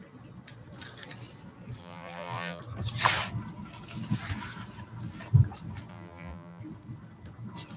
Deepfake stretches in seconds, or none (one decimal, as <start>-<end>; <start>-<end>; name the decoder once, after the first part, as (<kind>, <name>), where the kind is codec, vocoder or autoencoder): 1.8-2.6 (vocoder, BigVGAN v2); 5.9-6.6